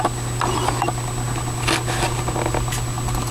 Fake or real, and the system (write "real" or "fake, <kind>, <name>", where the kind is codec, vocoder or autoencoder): real